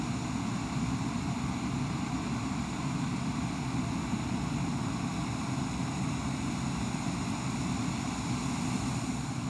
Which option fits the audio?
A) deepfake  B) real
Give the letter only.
B